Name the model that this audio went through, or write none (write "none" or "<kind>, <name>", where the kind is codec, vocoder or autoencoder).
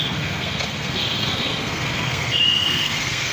codec, SNAC